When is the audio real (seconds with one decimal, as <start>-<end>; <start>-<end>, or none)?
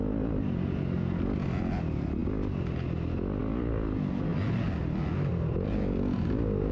0.0-6.7